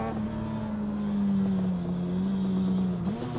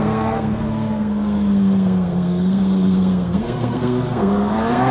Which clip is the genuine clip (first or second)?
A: first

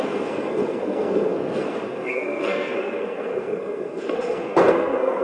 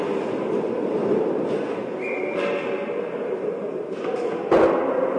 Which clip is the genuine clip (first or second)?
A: second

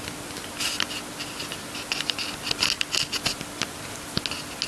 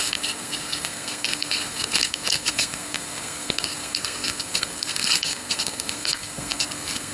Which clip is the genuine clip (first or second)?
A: first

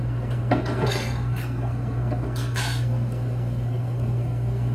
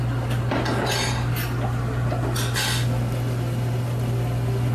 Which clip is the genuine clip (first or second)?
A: second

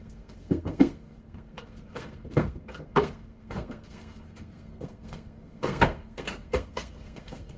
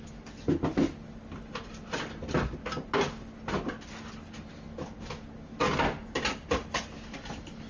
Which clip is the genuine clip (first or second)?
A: second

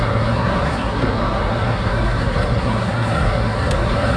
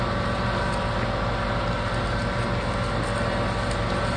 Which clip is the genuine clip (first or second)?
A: second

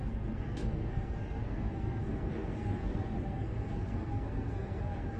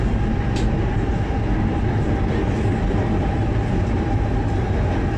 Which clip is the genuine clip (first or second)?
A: second